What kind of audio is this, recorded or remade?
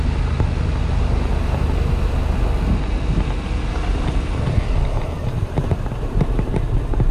recorded